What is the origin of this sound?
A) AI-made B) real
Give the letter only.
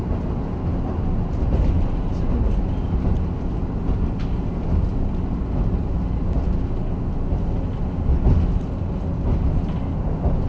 B